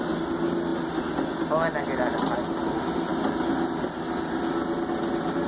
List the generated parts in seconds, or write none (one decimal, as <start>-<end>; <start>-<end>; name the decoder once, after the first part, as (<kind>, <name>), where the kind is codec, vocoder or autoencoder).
none